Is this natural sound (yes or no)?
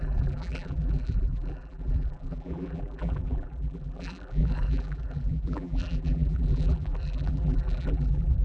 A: no